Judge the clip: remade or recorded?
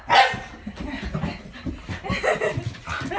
recorded